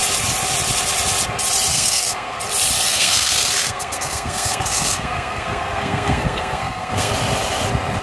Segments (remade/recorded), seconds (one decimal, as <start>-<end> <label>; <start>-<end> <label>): 0.0-1.7 recorded; 1.7-2.4 remade; 2.4-2.9 recorded; 2.9-7.1 remade; 7.1-8.0 recorded